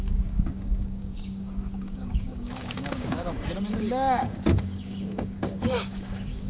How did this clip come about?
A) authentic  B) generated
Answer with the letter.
B